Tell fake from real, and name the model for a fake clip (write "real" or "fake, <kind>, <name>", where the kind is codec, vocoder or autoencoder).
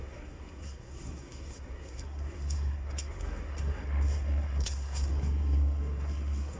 fake, codec, SNAC